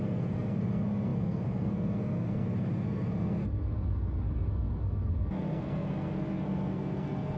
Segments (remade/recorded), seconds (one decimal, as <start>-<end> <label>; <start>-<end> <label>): 0.0-7.4 remade